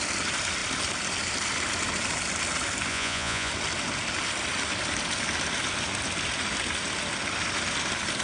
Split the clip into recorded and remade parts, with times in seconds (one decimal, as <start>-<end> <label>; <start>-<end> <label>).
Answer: 0.0-2.9 recorded; 2.9-3.5 remade; 3.5-8.2 recorded